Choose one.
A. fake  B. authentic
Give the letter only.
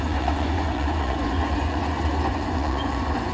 A